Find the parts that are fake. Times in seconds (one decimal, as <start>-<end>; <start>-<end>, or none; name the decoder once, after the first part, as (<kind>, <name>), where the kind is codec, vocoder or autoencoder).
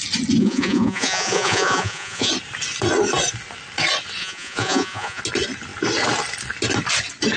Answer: 0.4-2.3 (vocoder, Vocos); 4.2-5.2